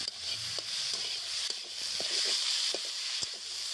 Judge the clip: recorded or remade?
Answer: recorded